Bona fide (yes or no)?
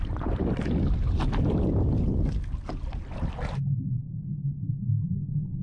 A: yes